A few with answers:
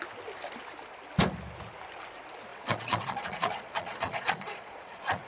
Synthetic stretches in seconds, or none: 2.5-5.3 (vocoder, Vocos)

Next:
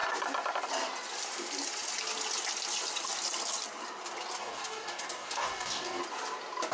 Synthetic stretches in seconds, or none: 4.4-6.0 (codec, DAC)

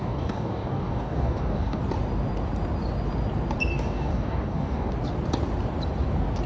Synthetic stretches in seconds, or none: 0.0-1.8 (codec, DAC); 3.7-4.9

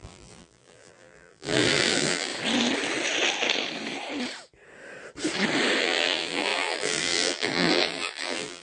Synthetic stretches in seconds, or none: 0.0-2.3 (vocoder, BigVGAN v2); 5.8-8.6

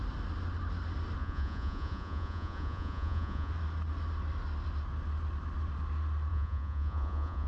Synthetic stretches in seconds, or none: 1.2-3.5 (vocoder, Vocos); 6.3-7.5

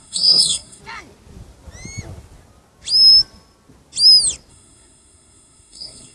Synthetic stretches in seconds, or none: 0.0-0.8 (codec, SNAC); 4.5-6.1

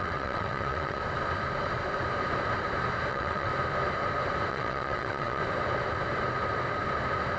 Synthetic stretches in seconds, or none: 0.0-1.0 (vocoder, WaveNeXt); 3.1-3.5; 4.5-5.4

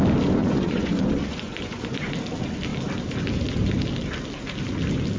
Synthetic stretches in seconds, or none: 0.4-2.1 (vocoder, Vocos)